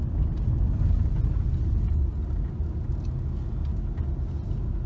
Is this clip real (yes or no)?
yes